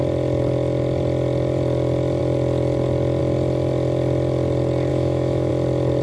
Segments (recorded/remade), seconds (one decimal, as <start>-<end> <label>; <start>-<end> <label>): 0.0-4.9 recorded; 4.9-5.5 remade; 5.5-6.0 recorded